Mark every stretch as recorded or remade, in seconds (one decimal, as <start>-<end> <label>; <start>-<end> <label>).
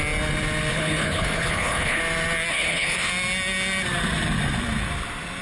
0.0-0.7 recorded; 0.7-2.0 remade; 2.0-2.5 recorded; 2.5-3.1 remade; 3.1-5.4 recorded